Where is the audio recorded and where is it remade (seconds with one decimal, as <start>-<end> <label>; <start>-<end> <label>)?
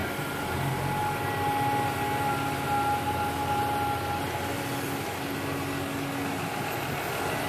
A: 0.0-7.5 recorded